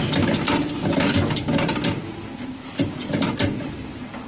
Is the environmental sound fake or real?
real